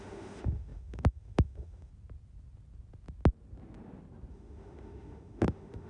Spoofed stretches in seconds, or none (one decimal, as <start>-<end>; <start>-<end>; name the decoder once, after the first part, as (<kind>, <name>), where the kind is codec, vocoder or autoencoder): 0.0-1.9 (autoencoder, DAC-VAE); 4.3-5.9